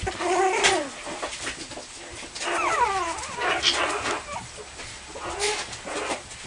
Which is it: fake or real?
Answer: real